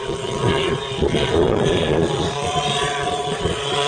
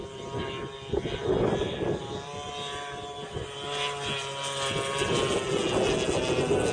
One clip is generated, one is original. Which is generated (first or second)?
first